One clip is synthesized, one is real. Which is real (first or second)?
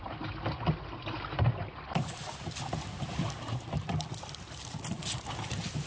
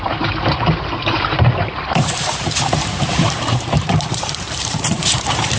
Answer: first